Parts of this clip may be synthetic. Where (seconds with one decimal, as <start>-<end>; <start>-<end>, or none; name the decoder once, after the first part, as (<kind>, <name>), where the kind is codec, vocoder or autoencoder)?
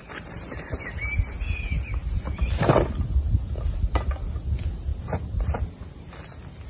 none